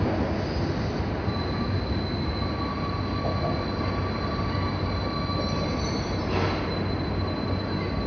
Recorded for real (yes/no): yes